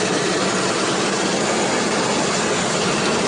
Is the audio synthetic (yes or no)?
no